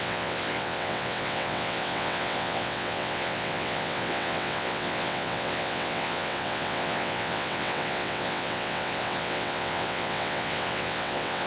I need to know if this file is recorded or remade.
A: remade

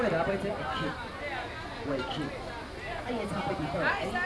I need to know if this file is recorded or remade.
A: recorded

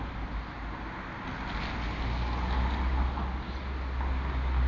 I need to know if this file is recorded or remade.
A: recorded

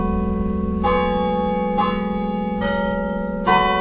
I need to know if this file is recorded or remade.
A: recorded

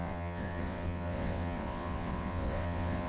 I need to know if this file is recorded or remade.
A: remade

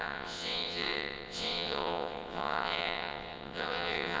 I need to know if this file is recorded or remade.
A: remade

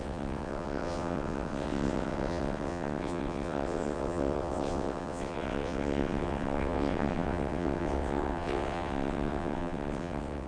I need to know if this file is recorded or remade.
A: remade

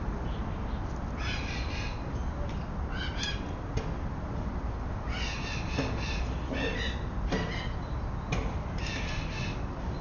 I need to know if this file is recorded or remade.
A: recorded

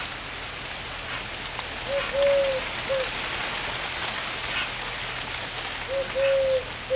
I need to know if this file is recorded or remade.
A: recorded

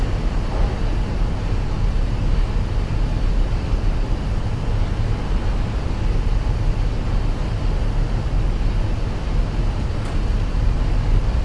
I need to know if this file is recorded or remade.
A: recorded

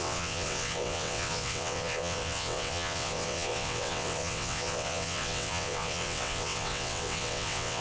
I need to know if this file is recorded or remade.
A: remade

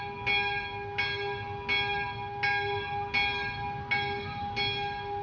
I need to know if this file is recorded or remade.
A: recorded